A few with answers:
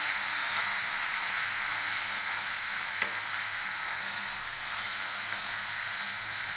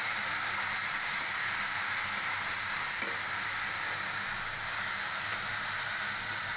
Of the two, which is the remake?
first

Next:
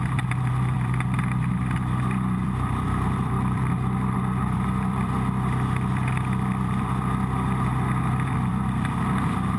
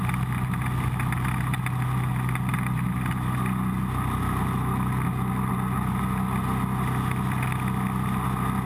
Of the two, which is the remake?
first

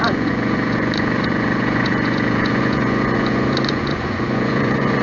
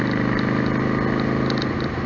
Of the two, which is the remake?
first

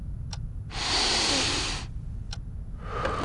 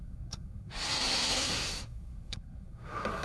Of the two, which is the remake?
second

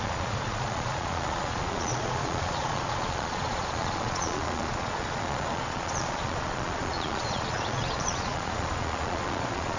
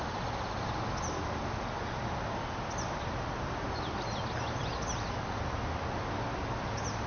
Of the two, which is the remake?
first